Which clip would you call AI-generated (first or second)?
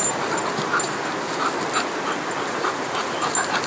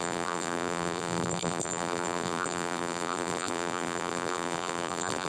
second